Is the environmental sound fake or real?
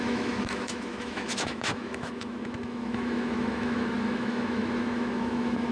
fake